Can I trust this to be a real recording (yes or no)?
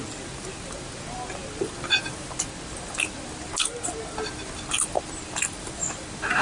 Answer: yes